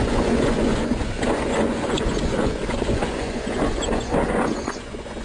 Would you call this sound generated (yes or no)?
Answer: yes